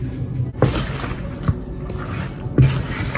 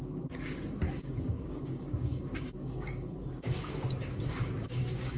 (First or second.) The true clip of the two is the first